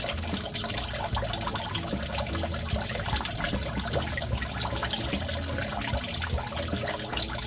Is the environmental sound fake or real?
real